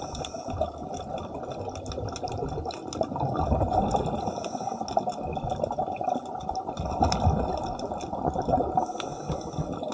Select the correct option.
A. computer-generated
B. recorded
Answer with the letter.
B